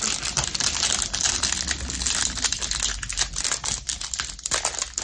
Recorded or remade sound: recorded